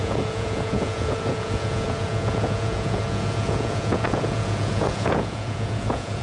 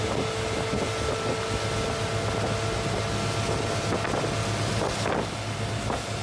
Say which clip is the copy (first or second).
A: first